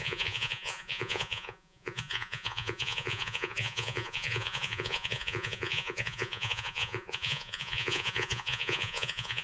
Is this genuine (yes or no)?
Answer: no